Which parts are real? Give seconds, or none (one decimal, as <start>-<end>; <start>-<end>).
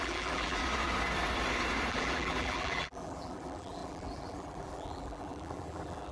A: 0.6-1.9